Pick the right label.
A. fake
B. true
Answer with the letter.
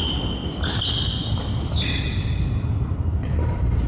A